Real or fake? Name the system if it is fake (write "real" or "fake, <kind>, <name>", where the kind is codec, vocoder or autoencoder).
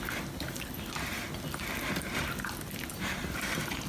fake, vocoder, BigVGAN v2